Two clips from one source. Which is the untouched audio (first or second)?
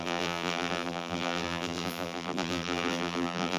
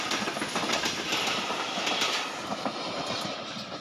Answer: second